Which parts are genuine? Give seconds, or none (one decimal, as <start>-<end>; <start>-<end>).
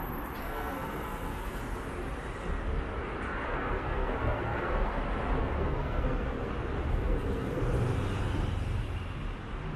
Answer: 0.0-0.4; 1.6-3.5; 5.0-5.4; 6.5-6.9; 7.6-9.8